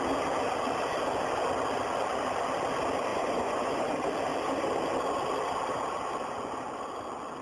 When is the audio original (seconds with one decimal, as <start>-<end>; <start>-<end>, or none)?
0.0-3.1; 3.9-7.4

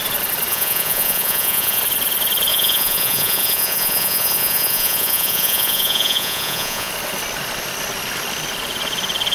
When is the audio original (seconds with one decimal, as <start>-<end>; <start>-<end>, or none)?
0.0-0.5; 1.8-2.5; 6.9-9.3

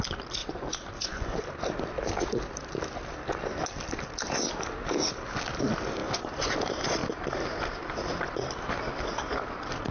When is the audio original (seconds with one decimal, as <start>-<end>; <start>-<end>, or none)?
0.0-0.4; 1.5-6.0; 6.5-9.9

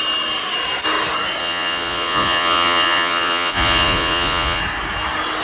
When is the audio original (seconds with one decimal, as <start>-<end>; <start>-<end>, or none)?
0.0-1.4; 4.6-5.4

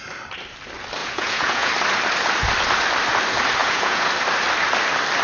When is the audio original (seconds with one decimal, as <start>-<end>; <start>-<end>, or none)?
0.0-1.0; 1.7-3.6; 4.1-5.2

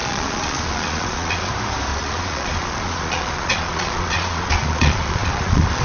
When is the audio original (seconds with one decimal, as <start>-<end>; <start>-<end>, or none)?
1.5-1.9

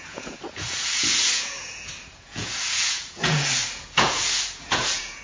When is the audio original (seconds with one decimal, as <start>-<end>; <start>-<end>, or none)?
none